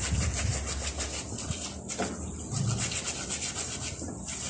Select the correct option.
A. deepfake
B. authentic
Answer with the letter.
B